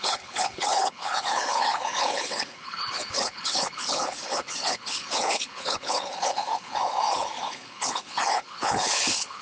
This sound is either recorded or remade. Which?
remade